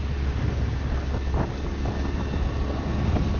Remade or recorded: recorded